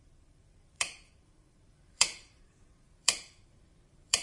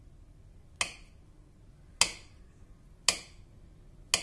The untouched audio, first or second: second